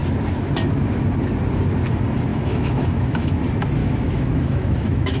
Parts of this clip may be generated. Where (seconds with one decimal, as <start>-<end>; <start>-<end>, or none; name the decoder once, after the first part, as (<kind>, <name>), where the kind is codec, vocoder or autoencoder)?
2.3-3.4 (autoencoder, DAC-VAE); 3.8-5.2